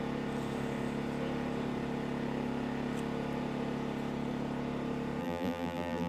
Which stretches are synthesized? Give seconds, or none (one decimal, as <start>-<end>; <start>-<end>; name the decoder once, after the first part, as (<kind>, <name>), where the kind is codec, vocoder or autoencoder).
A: 5.2-6.1 (vocoder, BigVGAN v2)